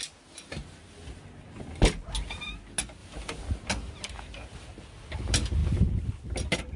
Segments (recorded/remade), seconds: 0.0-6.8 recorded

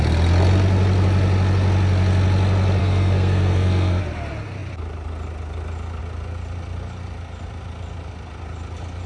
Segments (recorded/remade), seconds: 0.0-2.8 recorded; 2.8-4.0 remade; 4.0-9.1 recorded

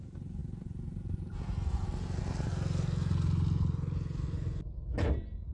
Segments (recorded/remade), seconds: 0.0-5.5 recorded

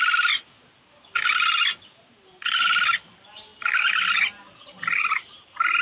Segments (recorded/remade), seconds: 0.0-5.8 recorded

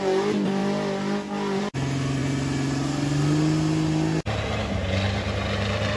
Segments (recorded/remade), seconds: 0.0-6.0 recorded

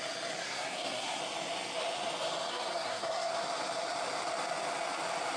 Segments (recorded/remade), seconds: 0.0-0.4 recorded; 0.4-1.2 remade; 1.2-2.5 recorded; 2.5-3.3 remade; 3.3-5.4 recorded

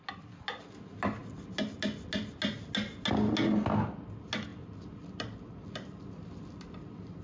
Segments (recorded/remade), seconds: 0.0-7.2 recorded

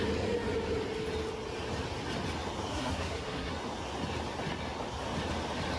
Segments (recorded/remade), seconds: 0.0-2.7 recorded; 2.7-3.5 remade; 3.5-5.8 recorded